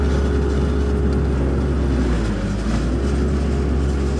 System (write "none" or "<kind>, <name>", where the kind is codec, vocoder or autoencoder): none